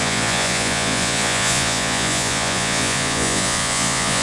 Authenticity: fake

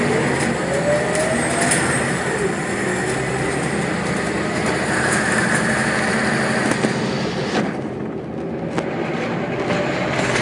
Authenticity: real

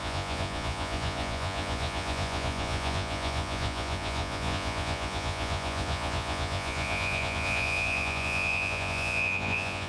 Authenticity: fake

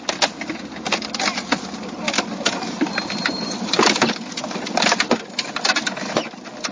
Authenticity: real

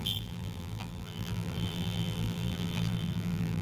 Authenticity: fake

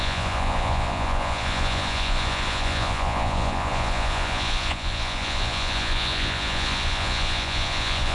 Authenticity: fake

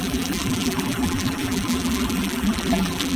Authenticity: fake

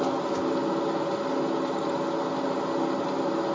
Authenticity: real